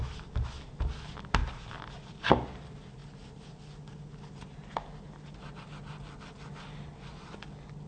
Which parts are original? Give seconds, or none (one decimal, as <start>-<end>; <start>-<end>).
0.0-7.9